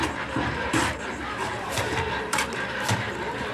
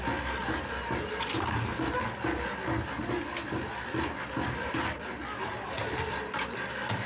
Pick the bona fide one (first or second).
second